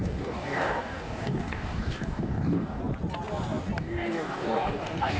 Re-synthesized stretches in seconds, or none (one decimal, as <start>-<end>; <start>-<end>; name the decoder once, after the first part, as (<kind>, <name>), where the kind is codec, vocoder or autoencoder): 0.0-2.8 (codec, DAC); 3.8-5.2